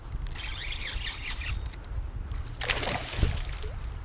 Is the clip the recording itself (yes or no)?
yes